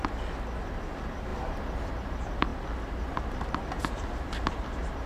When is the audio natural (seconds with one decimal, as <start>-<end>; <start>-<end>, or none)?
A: 0.0-5.1